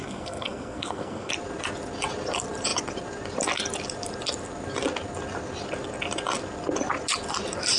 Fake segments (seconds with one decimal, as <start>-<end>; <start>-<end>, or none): 0.0-1.3